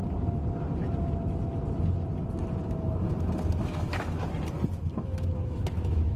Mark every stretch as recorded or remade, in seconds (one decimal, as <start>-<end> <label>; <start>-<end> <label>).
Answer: 0.0-3.6 recorded; 3.6-4.2 remade; 4.2-4.9 recorded; 4.9-6.2 remade